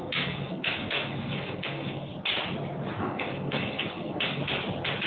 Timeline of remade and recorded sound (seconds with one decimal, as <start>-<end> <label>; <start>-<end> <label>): 0.0-2.1 remade; 2.1-3.0 recorded; 3.0-4.4 remade; 4.4-5.1 recorded